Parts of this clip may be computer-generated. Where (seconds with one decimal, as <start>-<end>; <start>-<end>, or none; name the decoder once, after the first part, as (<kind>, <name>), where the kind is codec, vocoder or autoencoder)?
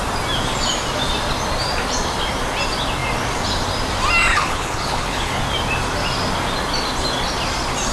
4.3-5.4 (codec, HILCodec)